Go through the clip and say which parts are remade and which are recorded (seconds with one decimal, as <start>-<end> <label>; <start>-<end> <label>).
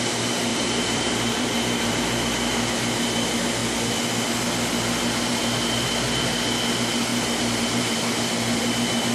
0.0-0.5 recorded; 0.5-2.0 remade; 2.0-7.1 recorded; 7.1-8.0 remade; 8.0-9.1 recorded